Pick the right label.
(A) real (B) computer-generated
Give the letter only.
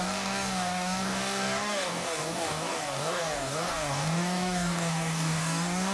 B